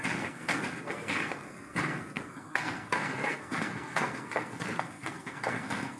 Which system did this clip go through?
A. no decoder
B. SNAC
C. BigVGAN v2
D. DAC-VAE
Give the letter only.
B